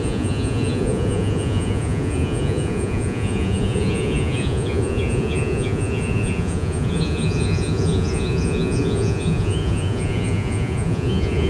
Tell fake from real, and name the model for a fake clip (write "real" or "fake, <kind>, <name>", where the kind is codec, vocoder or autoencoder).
fake, vocoder, Vocos